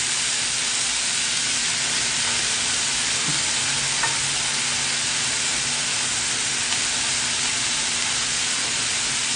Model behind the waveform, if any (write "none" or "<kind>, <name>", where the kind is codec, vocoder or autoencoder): none